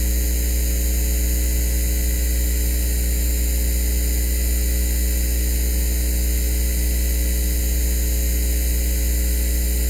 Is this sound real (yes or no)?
yes